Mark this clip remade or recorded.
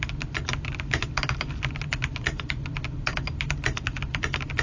recorded